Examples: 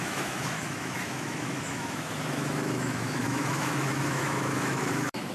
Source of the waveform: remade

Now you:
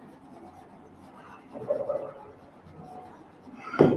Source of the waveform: recorded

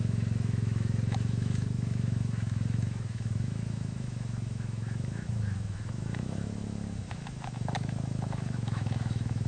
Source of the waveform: remade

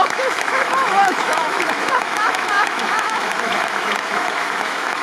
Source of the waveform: remade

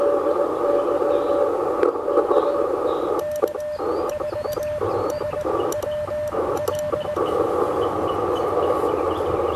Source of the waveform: recorded